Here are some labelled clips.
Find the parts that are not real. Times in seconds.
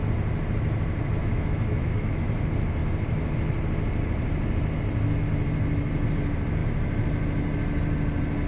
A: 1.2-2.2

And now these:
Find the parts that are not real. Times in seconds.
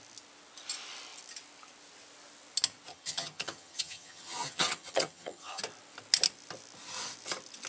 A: 2.9-5.6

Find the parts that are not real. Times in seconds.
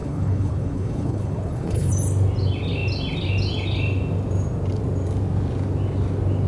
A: 0.0-1.9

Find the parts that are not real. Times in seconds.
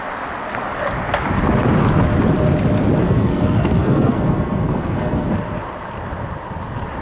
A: 3.0-5.3